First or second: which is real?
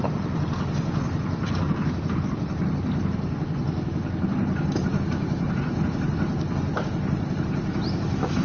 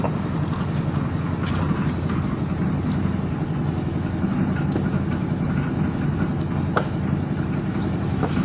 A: second